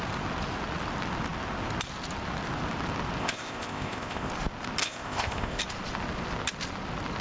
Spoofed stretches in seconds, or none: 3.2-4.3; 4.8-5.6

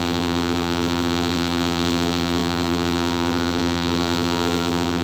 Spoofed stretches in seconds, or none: 0.0-5.0

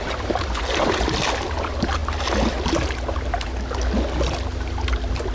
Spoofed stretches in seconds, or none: none

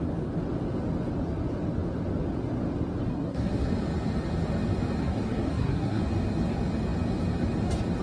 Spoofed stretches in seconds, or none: 3.1-3.7; 5.0-6.0